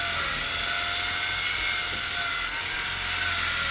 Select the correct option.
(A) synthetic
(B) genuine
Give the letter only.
B